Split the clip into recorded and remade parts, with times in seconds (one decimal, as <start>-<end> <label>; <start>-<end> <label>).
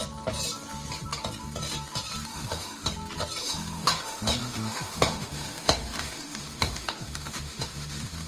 0.0-2.3 recorded; 2.3-2.9 remade; 2.9-3.4 recorded; 3.4-8.3 remade